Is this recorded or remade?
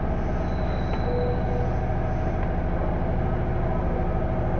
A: recorded